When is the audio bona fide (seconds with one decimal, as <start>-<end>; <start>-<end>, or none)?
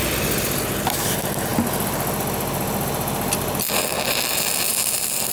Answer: 0.0-5.3